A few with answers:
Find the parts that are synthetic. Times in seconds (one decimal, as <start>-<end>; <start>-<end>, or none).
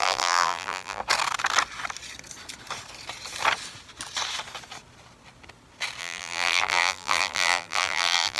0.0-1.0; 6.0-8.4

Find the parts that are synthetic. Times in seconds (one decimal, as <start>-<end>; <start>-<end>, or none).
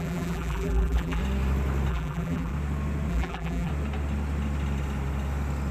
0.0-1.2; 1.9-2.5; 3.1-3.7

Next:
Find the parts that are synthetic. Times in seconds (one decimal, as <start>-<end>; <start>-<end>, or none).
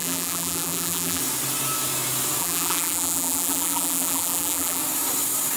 0.0-1.2; 2.4-4.8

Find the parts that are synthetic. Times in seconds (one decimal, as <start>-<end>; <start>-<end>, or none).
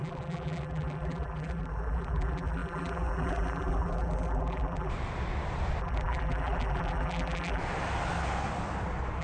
0.0-4.9; 5.8-7.6